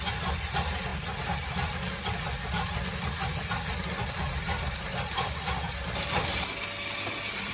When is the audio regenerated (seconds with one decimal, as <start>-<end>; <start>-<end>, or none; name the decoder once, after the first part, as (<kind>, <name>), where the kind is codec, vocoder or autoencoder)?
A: none